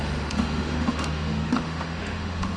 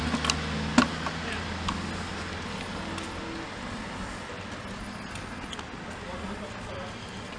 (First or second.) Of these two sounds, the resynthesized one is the first